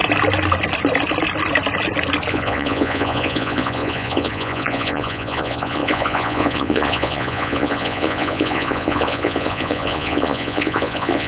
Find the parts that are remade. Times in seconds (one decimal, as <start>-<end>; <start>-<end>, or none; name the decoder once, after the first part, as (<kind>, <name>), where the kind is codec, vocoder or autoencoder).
2.3-11.3 (vocoder, Vocos)